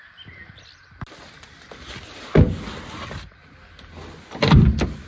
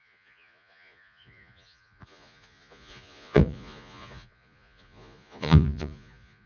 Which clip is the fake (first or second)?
second